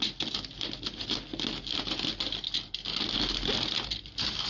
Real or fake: real